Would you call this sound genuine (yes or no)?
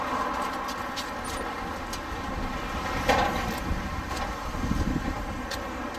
yes